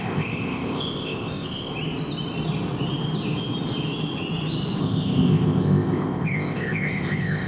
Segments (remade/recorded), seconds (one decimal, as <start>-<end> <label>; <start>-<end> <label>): 0.0-1.7 remade; 1.7-4.8 recorded; 4.8-7.5 remade